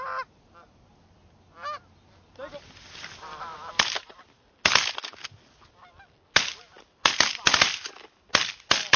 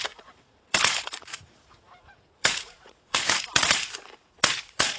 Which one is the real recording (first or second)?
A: first